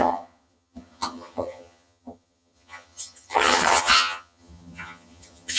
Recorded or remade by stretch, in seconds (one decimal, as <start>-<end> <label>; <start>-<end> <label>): 0.0-5.6 remade